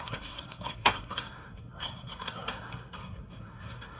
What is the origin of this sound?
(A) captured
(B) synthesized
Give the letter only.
B